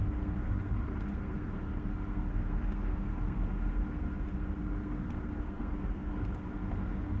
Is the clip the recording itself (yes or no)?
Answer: no